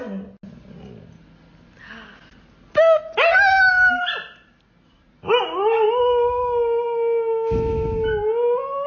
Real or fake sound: real